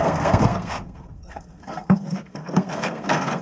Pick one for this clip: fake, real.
fake